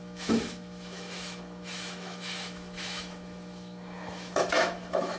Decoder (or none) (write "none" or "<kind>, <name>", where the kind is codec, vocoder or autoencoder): autoencoder, DAC-VAE